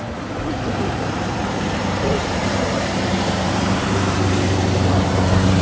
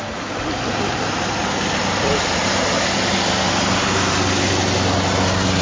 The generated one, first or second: first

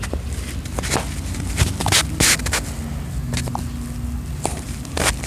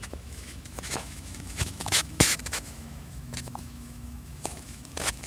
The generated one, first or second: second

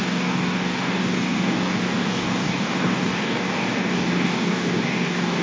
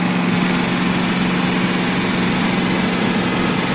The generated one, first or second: first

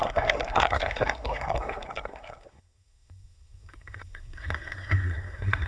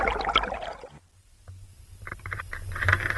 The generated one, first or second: first